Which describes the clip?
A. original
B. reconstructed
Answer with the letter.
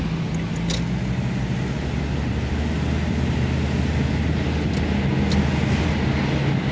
A